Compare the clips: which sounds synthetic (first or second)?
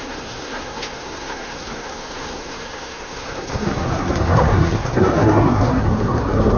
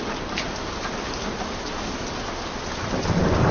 first